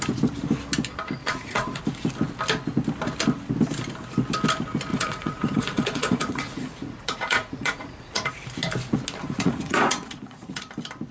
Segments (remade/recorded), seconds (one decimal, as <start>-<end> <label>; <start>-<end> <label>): 0.0-1.2 recorded; 1.2-1.8 remade; 1.8-4.9 recorded; 4.9-8.3 remade; 8.3-9.2 recorded; 9.2-10.7 remade; 10.7-11.1 recorded